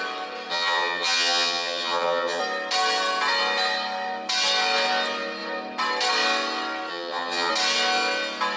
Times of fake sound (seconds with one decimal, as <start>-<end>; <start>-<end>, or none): 0.5-2.4; 6.9-7.5